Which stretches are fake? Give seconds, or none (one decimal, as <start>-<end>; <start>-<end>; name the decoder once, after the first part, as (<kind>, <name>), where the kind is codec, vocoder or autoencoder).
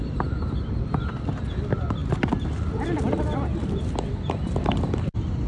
none